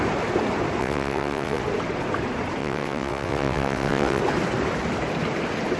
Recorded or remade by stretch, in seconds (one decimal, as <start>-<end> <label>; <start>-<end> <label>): 0.0-0.8 recorded; 0.8-1.6 remade; 1.6-2.6 recorded; 2.6-4.2 remade; 4.2-5.8 recorded